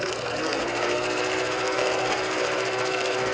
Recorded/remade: remade